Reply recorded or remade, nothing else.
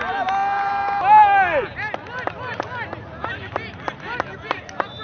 recorded